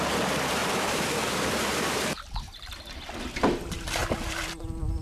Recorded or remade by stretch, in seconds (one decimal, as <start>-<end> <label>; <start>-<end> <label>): 0.0-0.6 recorded; 0.6-2.8 remade; 2.8-5.0 recorded